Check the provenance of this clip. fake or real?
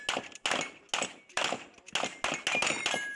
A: real